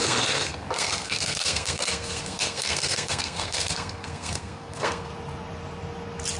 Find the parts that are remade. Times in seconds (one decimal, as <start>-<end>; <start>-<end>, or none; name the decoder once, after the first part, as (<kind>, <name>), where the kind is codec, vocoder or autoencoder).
0.0-5.1 (codec, SNAC)